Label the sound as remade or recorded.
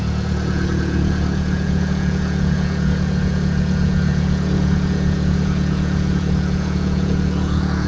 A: remade